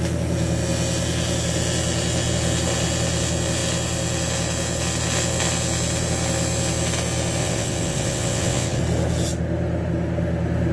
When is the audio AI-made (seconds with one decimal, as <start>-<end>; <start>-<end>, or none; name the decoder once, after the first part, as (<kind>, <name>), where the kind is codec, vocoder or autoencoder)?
7.4-8.8 (vocoder, WaveNeXt)